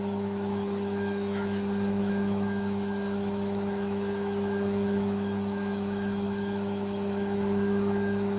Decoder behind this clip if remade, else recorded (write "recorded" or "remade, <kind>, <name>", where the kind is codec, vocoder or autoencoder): remade, autoencoder, DAC-VAE